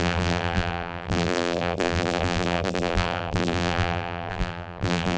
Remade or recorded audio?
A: remade